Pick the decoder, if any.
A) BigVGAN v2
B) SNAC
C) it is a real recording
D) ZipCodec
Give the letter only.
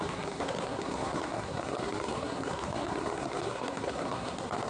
B